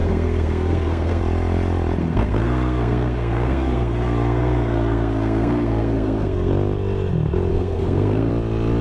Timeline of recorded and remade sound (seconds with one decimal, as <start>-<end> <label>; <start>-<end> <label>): 0.0-1.2 remade; 1.2-2.0 recorded; 2.0-6.5 remade; 6.5-7.5 recorded; 7.5-8.3 remade; 8.3-8.8 recorded